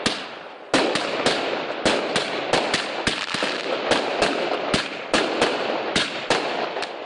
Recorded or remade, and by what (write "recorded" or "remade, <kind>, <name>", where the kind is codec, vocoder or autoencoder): recorded